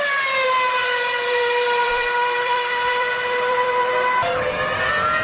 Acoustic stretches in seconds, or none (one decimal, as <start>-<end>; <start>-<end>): 0.0-0.8; 3.9-5.2